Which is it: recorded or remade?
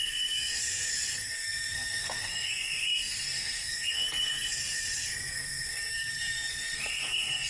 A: remade